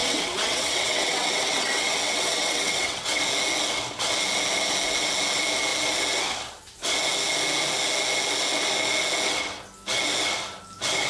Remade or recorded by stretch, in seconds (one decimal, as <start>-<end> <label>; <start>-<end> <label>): 0.0-3.2 remade; 3.2-11.1 recorded